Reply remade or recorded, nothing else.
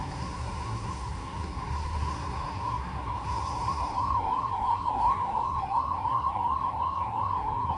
remade